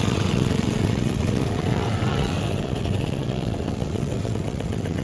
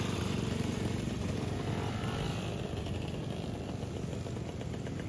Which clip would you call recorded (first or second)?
second